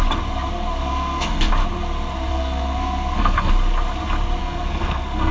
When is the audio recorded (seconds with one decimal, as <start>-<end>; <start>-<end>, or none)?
0.0-0.8; 1.5-2.3; 3.5-4.4